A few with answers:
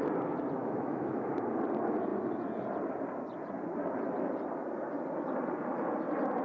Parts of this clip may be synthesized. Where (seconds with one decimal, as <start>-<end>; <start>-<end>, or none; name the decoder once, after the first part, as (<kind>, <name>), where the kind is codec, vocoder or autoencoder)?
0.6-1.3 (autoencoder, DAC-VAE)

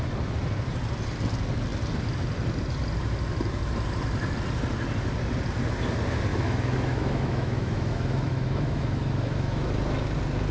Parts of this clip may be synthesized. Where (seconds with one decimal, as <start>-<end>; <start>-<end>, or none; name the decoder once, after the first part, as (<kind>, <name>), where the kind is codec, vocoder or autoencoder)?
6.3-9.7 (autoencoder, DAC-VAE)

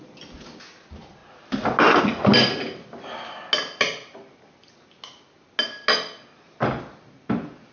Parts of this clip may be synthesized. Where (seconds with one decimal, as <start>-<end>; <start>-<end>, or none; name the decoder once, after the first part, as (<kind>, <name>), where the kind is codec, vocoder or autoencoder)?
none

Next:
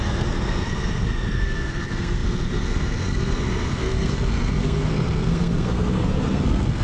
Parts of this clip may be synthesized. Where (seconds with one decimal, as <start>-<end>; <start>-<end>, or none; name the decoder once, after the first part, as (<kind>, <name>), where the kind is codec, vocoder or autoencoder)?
0.0-6.8 (codec, SNAC)

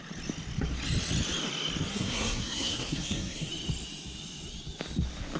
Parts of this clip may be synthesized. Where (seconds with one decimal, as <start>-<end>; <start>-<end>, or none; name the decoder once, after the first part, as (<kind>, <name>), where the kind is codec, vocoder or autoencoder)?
1.9-3.5 (codec, SNAC)

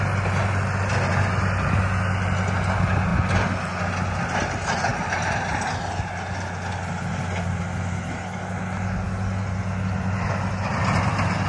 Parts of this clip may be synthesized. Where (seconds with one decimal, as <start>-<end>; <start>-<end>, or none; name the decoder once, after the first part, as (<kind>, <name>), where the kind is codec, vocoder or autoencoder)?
none

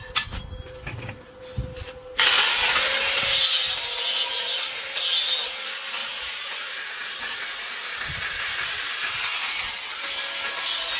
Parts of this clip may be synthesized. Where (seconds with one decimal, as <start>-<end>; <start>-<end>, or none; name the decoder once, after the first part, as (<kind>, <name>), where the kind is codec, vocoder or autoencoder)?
6.0-7.7 (vocoder, Vocos)

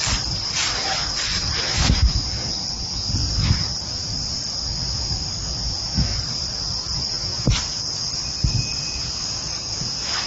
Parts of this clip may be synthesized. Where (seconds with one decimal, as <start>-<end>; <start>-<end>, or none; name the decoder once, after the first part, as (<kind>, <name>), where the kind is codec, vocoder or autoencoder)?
1.3-1.9 (vocoder, BigVGAN v2)